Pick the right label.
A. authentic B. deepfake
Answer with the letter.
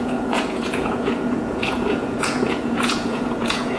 B